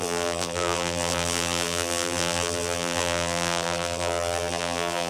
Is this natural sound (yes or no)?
no